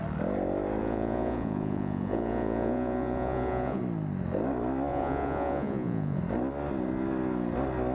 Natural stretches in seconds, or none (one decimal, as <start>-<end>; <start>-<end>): 0.0-0.8; 3.8-4.9; 6.2-7.9